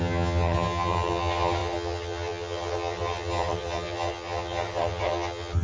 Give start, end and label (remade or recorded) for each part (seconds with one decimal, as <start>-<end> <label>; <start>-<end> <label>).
0.0-5.6 remade